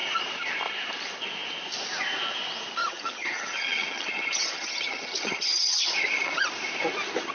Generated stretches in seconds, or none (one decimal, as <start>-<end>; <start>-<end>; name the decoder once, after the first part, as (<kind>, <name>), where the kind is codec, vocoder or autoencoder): 2.8-6.5 (vocoder, HiFi-GAN)